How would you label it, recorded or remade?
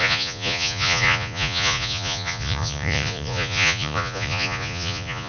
remade